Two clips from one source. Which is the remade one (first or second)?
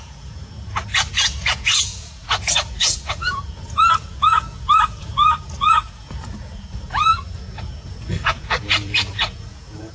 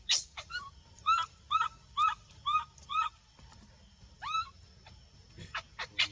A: first